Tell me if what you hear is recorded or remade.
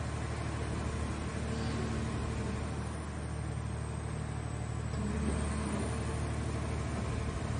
recorded